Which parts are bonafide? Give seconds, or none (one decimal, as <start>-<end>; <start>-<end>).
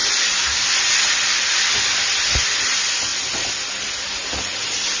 0.0-5.0